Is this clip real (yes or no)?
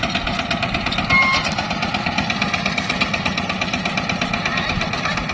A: yes